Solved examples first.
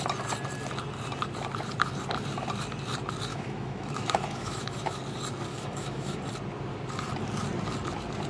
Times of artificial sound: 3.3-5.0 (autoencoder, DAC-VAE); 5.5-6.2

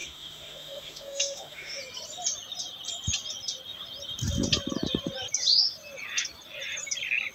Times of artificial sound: 0.0-1.8 (autoencoder, DAC-VAE)

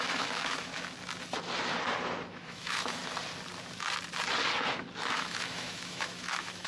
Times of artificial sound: 0.0-0.7 (autoencoder, DAC-VAE); 2.3-3.0; 5.0-6.7

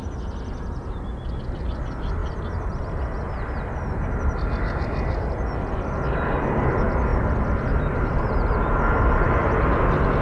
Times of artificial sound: none

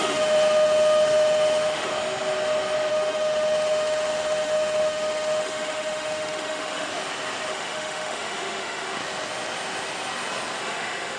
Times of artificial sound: 0.0-1.9 (autoencoder, DAC-VAE); 2.9-6.9; 7.5-9.0; 10.6-11.2

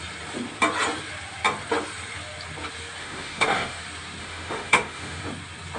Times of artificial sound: 3.0-3.8 (autoencoder, DAC-VAE); 4.2-5.2

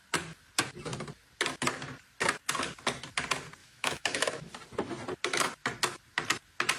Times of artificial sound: 3.6-4.5 (autoencoder, DAC-VAE)

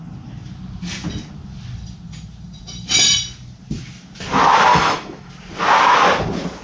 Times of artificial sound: 4.7-5.3 (autoencoder, DAC-VAE)